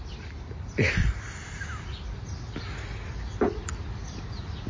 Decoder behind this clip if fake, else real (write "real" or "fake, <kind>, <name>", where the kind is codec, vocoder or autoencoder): real